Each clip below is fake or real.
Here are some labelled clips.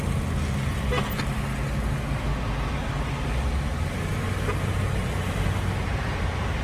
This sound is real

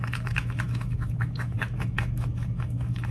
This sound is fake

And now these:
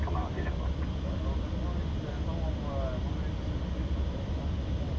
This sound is real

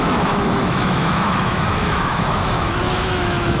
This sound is fake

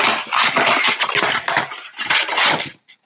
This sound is real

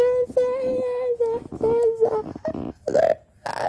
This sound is real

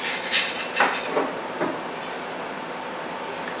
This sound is real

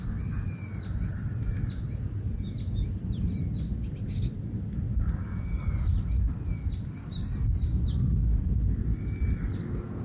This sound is real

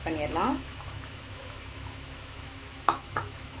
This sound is fake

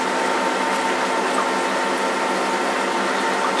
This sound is real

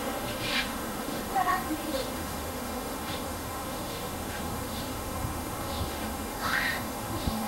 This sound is fake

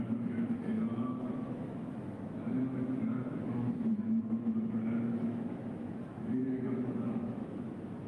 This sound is fake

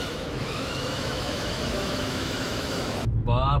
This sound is fake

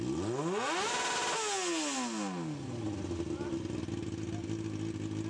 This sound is real